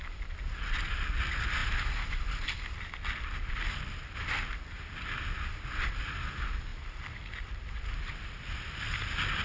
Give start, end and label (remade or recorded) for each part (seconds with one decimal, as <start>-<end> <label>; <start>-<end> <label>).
0.0-9.4 recorded